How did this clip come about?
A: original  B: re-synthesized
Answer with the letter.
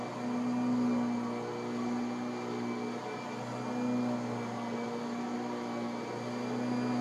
A